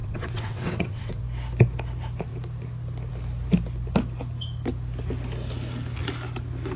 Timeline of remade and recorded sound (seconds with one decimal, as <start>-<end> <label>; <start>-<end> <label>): 0.0-1.2 remade; 1.2-6.8 recorded